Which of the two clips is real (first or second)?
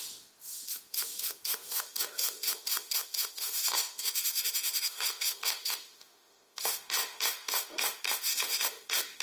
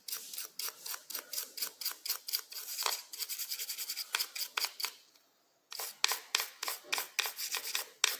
second